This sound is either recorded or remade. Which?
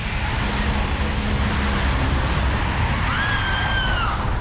recorded